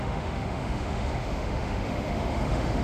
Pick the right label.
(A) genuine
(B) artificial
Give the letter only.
B